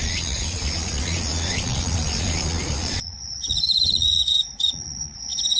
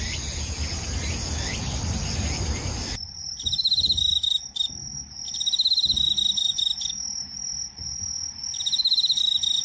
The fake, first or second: first